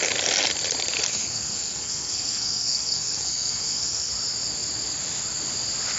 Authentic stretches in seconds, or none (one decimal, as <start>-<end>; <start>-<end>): 0.0-1.1; 4.1-6.0